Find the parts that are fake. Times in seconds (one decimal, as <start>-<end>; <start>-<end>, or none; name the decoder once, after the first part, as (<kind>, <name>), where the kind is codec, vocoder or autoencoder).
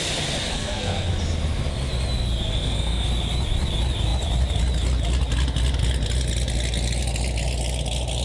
0.5-1.1 (codec, SNAC); 2.5-3.1